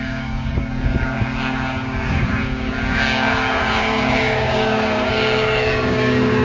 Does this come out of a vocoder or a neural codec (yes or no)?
yes